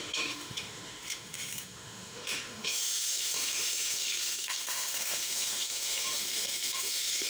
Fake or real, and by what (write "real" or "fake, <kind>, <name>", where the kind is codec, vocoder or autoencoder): fake, autoencoder, DAC-VAE